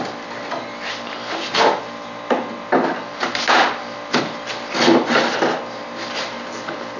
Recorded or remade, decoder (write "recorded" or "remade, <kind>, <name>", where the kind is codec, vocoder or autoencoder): recorded